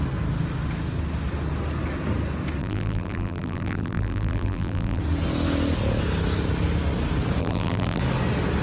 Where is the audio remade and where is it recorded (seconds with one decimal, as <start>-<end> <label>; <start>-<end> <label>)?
0.0-2.6 recorded; 2.6-5.0 remade; 5.0-7.4 recorded; 7.4-8.0 remade; 8.0-8.6 recorded